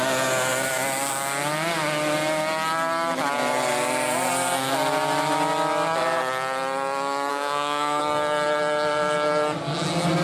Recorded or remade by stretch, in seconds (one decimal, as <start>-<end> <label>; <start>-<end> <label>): 0.0-7.3 recorded; 7.3-8.0 remade; 8.0-10.2 recorded